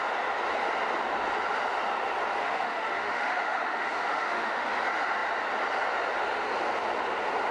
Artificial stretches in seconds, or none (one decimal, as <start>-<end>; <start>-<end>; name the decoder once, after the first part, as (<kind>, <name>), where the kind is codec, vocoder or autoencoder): 2.4-4.7 (autoencoder, DAC-VAE)